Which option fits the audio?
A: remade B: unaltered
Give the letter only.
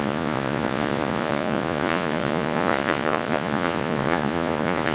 A